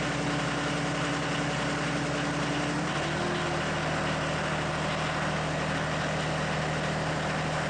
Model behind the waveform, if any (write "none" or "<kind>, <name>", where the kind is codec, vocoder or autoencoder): none